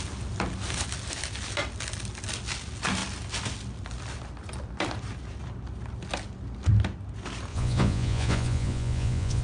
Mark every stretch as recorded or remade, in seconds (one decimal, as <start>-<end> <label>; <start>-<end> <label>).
0.0-7.5 recorded; 7.5-9.4 remade